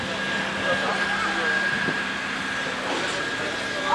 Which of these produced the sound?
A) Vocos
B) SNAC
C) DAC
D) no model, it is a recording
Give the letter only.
D